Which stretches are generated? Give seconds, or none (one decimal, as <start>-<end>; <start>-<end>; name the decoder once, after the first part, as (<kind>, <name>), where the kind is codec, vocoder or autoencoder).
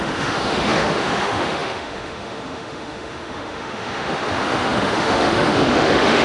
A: 0.0-6.2 (autoencoder, DAC-VAE)